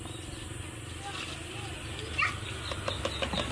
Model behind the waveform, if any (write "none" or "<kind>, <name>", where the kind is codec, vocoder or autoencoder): none